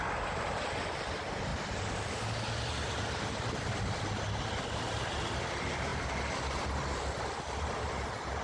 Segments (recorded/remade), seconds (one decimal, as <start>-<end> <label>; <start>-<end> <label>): 0.0-8.4 recorded